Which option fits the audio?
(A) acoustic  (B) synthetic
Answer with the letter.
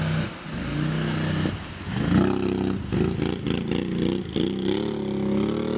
A